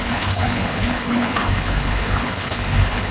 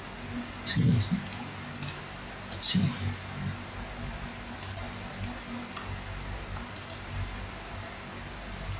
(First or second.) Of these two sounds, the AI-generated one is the first